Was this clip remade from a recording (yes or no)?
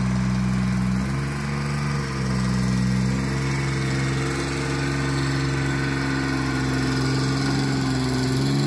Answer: no